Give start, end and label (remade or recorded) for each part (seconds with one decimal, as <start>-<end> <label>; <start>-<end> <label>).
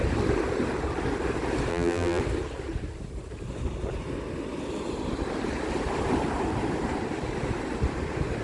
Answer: 0.0-1.7 recorded; 1.7-2.2 remade; 2.2-8.4 recorded